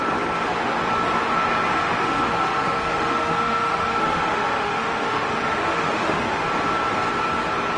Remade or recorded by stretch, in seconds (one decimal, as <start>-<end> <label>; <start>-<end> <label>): 0.0-1.7 recorded; 1.7-6.4 remade; 6.4-7.8 recorded